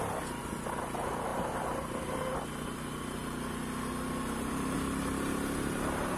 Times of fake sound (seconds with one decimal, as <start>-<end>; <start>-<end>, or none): none